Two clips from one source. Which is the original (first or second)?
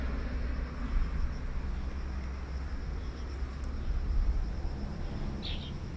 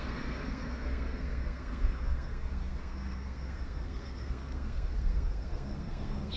first